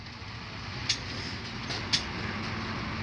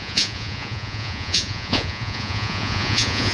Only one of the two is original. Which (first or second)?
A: first